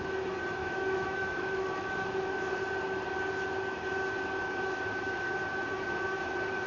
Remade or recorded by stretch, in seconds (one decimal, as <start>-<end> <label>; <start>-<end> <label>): 0.0-0.6 recorded; 0.6-2.6 remade; 2.6-4.4 recorded; 4.4-5.4 remade; 5.4-6.7 recorded